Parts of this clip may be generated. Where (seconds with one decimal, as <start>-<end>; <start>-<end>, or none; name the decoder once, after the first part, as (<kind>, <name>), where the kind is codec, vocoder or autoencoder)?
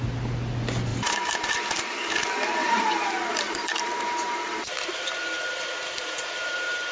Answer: 0.9-1.6 (vocoder, BigVGAN v2); 2.6-6.9